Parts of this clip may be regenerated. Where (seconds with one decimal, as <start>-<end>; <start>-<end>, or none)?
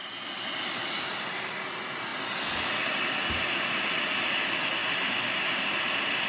none